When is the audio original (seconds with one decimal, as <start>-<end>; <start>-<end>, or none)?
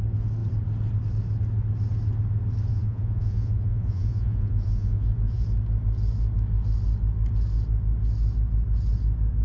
0.0-2.7; 5.4-9.4